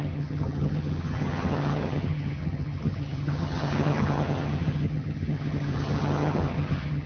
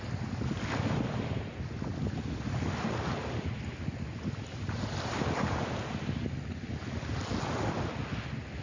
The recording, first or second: second